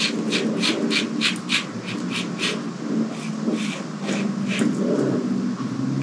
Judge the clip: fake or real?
real